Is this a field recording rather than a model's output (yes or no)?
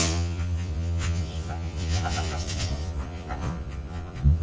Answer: no